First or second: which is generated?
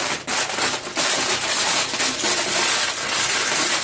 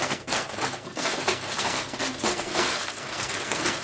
second